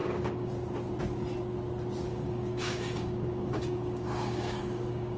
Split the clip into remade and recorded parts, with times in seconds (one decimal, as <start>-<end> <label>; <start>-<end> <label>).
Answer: 0.0-0.5 remade; 0.5-2.1 recorded; 2.1-5.2 remade